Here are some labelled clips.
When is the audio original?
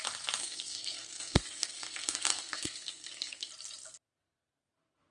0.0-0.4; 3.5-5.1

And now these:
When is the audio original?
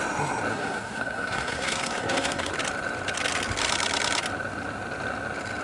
0.0-0.5; 2.5-5.6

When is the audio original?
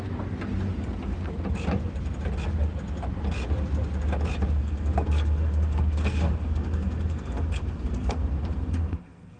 0.0-4.6